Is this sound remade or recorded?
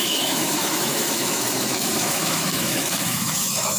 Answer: remade